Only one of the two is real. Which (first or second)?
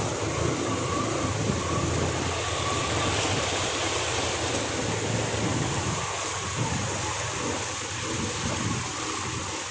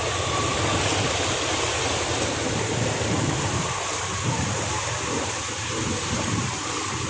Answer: first